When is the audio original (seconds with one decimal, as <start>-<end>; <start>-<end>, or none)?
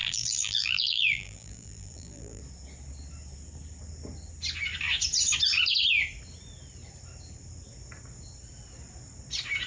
2.4-9.7